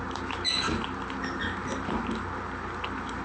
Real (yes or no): yes